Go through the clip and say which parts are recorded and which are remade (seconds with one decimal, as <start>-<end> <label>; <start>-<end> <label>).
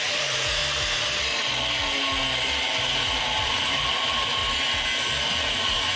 0.0-0.6 remade; 0.6-2.8 recorded; 2.8-4.4 remade; 4.4-5.5 recorded; 5.5-6.0 remade